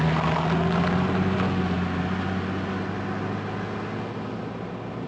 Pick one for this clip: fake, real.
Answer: real